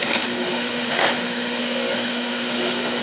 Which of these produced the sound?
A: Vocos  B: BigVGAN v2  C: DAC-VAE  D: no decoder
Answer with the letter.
C